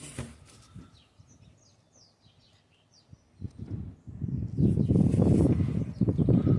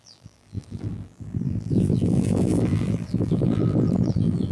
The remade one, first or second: second